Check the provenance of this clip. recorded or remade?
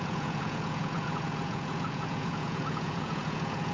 remade